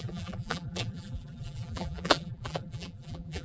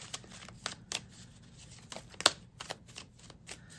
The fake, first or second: first